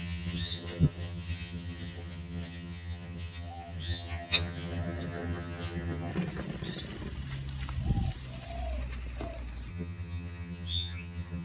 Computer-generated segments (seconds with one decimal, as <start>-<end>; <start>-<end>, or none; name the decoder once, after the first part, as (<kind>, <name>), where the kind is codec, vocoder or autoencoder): 0.0-6.1 (vocoder, HiFi-GAN); 9.7-11.4